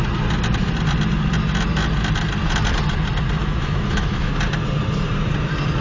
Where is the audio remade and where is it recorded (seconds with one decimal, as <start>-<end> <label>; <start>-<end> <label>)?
0.0-3.4 recorded; 3.4-4.3 remade; 4.3-5.8 recorded